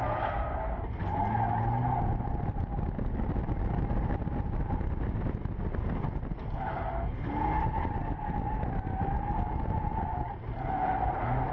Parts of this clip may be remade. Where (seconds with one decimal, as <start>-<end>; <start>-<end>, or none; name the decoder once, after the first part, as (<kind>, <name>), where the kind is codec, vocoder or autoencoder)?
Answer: none